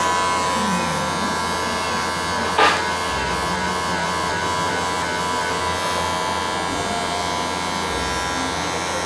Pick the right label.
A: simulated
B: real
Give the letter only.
B